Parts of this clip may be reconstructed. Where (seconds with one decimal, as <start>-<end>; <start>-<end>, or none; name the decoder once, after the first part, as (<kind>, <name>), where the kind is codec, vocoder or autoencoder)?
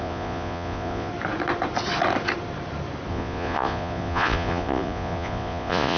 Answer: 0.0-1.1 (vocoder, Vocos); 3.1-6.0